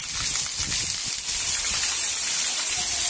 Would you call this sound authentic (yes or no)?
yes